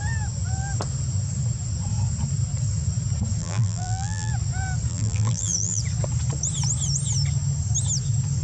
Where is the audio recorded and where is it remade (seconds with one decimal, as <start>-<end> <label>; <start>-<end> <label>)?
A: 0.0-3.4 recorded; 3.4-4.3 remade; 4.3-4.9 recorded; 4.9-5.8 remade; 5.8-8.4 recorded